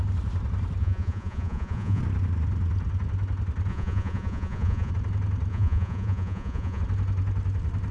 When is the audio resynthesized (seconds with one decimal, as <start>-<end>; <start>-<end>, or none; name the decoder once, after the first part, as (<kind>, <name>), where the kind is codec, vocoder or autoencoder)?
0.8-2.0 (vocoder, Vocos); 3.7-4.9; 5.5-6.8